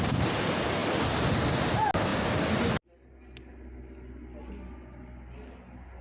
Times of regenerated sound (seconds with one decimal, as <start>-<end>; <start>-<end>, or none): 0.8-1.4